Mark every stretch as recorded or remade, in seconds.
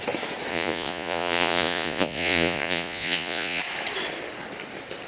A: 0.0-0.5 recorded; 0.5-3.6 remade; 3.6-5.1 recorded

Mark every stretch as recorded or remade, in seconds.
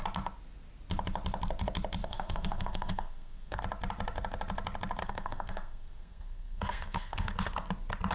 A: 0.0-2.0 recorded; 2.0-3.6 remade; 3.6-5.0 recorded; 5.0-7.3 remade; 7.3-8.1 recorded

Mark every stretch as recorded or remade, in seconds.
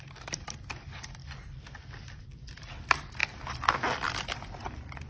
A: 0.0-5.1 recorded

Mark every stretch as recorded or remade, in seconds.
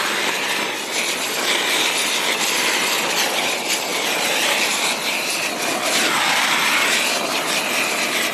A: 0.0-8.3 recorded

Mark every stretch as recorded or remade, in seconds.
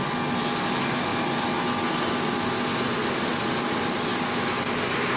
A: 0.0-5.2 recorded